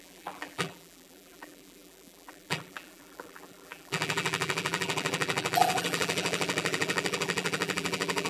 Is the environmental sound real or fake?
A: fake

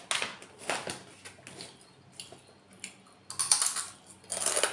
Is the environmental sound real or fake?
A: real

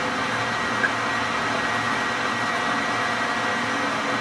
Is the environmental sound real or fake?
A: real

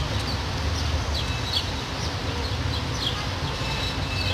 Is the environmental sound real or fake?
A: real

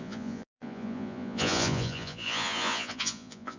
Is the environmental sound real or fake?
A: fake